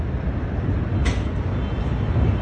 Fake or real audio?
real